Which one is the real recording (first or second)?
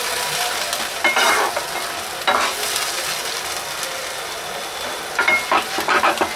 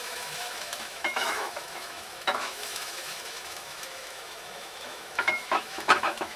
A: first